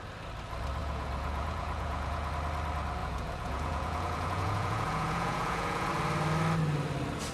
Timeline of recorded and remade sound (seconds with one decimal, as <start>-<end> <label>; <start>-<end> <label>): 0.0-0.8 recorded; 0.8-2.3 remade; 2.3-3.0 recorded; 3.0-5.9 remade; 5.9-7.3 recorded